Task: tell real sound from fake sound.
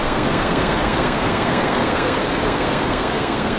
fake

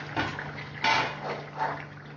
real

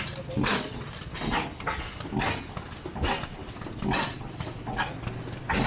real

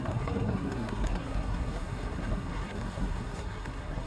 fake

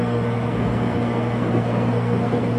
fake